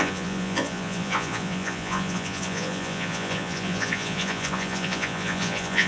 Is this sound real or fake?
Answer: fake